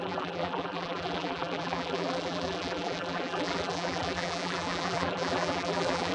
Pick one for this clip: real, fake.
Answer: fake